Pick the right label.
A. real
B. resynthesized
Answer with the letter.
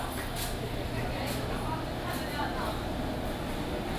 A